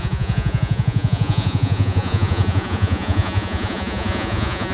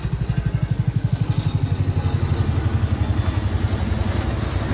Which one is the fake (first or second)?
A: first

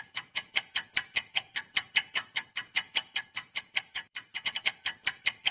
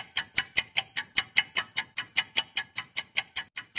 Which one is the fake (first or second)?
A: first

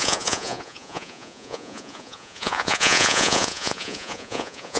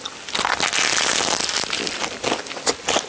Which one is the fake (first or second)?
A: first